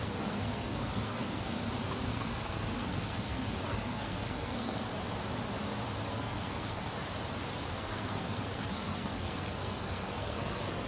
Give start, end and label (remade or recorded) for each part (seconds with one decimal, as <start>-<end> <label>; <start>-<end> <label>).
0.0-1.6 remade; 1.6-2.1 recorded; 2.1-4.9 remade; 4.9-6.1 recorded; 6.1-6.9 remade; 6.9-7.7 recorded; 7.7-10.9 remade